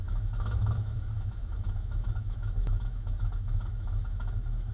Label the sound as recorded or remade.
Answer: remade